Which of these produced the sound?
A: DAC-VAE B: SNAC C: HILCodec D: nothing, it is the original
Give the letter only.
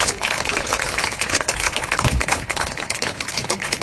C